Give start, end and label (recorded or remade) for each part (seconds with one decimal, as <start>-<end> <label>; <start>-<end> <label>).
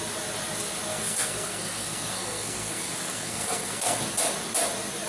0.0-0.9 recorded; 0.9-4.0 remade; 4.0-5.1 recorded